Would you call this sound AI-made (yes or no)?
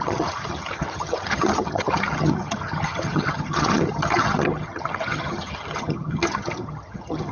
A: yes